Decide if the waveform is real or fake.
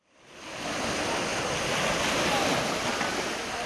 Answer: real